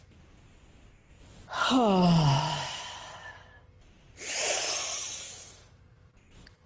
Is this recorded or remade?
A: recorded